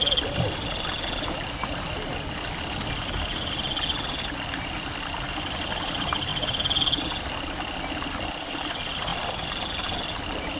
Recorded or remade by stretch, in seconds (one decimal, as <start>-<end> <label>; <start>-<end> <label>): 0.0-10.6 recorded